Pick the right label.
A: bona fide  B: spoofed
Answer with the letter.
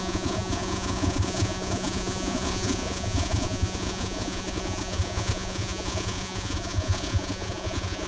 B